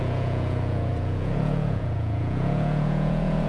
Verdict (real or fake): fake